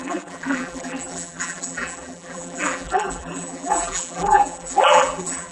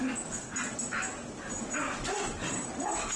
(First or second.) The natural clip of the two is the second